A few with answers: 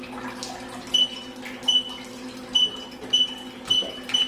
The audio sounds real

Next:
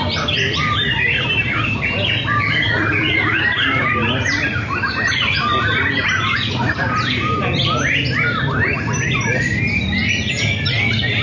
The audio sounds fake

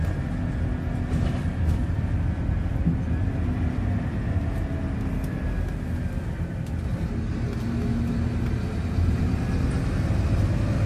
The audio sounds real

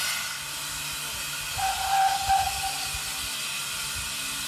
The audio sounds real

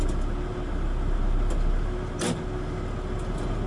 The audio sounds real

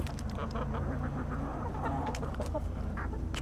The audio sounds fake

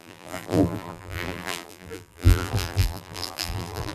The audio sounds fake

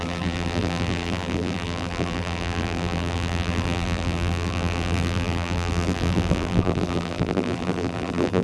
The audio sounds fake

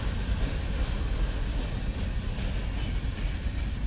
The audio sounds real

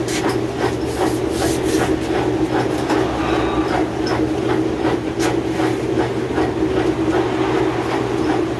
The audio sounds real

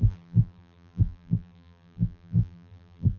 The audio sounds fake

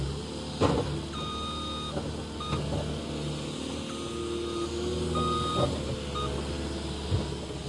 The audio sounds real